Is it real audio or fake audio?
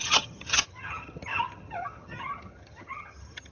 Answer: fake